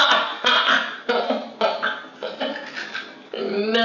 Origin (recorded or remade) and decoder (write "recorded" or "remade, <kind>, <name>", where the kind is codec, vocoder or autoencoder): recorded